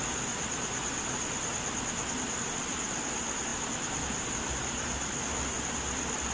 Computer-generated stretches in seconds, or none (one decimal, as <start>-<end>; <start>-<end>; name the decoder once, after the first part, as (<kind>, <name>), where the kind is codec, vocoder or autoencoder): none